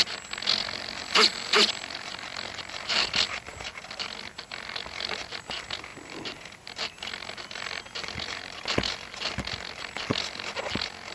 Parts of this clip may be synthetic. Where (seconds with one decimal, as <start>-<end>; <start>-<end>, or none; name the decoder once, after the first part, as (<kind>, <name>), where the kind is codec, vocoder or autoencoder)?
none